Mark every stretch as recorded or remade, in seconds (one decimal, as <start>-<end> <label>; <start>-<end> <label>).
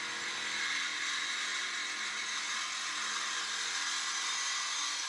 0.0-5.1 recorded